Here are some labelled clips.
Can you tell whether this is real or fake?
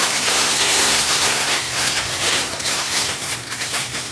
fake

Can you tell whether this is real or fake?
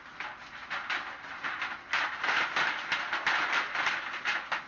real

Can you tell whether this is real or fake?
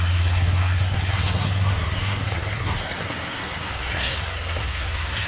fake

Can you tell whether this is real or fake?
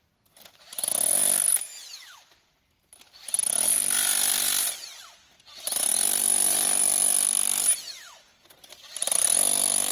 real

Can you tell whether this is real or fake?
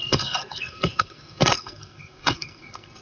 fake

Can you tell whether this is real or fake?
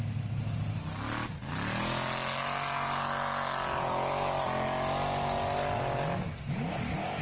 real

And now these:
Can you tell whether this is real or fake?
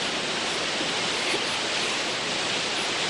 real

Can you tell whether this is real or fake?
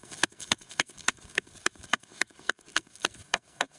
fake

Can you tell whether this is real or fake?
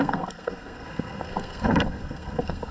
fake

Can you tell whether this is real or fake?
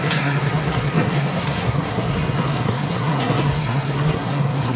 fake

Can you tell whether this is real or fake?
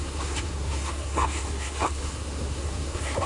fake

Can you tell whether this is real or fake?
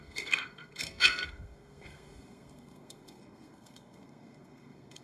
fake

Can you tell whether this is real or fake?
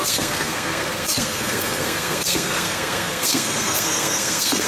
fake